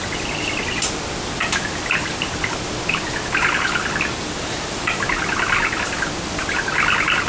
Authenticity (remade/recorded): remade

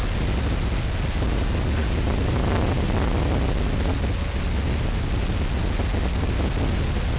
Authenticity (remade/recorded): recorded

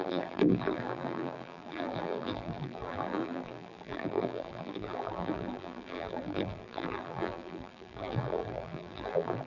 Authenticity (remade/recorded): remade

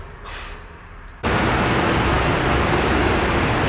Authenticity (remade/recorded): recorded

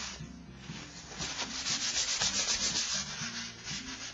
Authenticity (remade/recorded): recorded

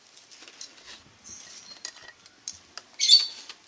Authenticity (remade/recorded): recorded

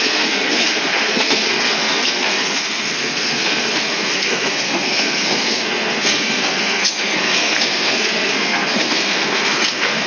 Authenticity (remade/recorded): remade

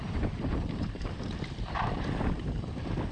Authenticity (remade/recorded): remade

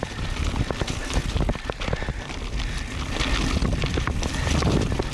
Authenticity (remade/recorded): recorded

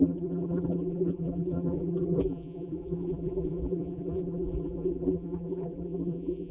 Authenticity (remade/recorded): remade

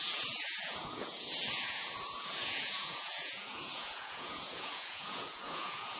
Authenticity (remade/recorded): remade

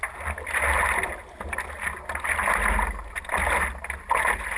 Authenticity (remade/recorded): recorded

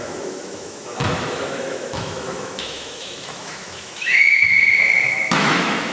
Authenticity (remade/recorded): remade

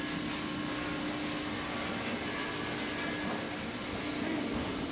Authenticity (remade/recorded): recorded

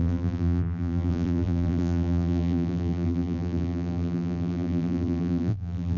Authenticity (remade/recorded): remade